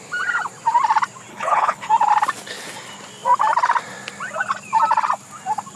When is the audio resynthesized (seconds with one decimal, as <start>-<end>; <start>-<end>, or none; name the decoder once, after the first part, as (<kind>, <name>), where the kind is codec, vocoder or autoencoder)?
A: 1.3-1.9 (codec, HILCodec)